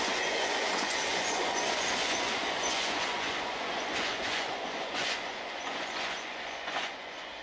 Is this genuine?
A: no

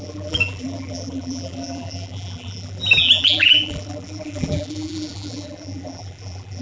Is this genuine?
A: no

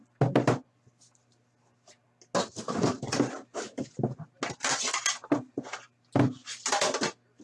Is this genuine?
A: yes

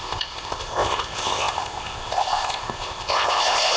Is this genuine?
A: no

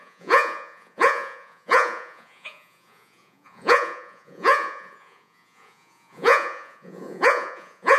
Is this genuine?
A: no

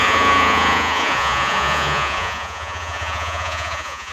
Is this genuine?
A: no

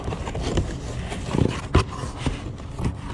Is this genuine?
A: yes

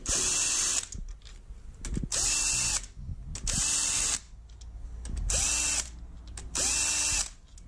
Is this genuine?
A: yes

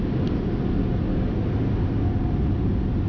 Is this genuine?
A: yes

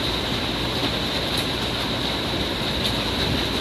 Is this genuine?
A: yes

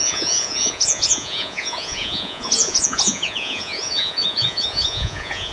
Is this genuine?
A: no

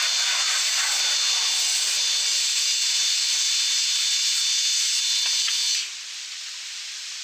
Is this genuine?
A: yes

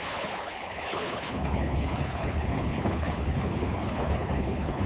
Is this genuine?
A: no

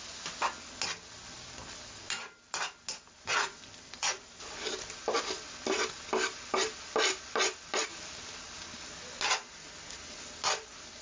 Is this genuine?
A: yes